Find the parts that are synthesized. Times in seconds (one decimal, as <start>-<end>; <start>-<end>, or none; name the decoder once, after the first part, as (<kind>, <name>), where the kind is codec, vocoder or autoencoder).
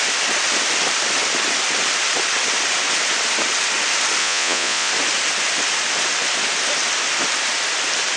4.2-4.9 (vocoder, Vocos)